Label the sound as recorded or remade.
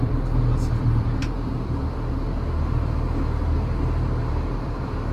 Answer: remade